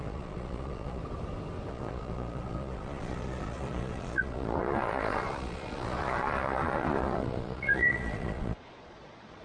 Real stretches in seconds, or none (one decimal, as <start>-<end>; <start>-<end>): 1.0-1.7

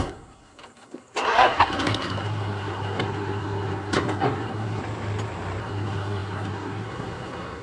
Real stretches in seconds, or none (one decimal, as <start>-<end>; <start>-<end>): 4.8-5.6

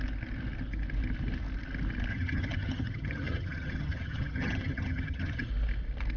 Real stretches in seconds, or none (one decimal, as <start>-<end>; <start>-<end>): 0.0-2.1; 5.5-6.2